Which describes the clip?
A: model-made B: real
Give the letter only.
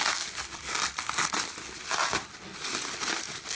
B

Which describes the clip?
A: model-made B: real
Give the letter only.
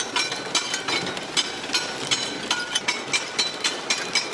B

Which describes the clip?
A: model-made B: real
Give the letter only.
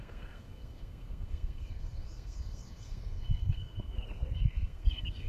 A